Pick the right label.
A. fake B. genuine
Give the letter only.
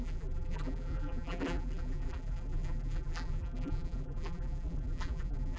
A